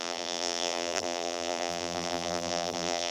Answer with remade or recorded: remade